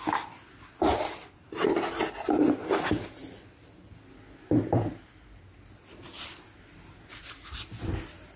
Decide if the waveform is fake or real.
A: real